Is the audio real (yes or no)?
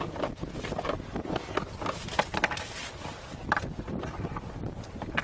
yes